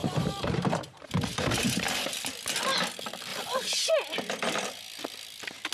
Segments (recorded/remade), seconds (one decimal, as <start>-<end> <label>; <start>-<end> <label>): 0.0-2.1 remade; 2.1-3.3 recorded; 3.3-3.9 remade; 3.9-5.7 recorded